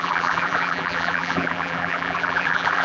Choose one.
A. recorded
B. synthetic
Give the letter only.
B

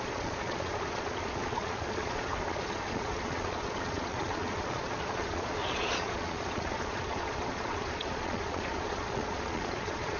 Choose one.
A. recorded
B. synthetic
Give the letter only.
B